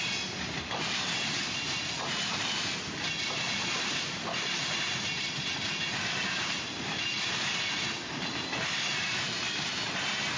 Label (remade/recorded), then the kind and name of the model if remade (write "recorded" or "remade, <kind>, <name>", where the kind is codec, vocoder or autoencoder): remade, vocoder, BigVGAN v2